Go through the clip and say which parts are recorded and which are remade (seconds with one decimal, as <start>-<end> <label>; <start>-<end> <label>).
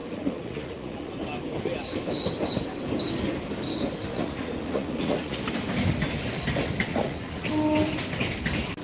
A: 0.0-1.1 remade; 1.1-4.1 recorded; 4.1-5.4 remade; 5.4-6.9 recorded; 6.9-7.5 remade; 7.5-8.8 recorded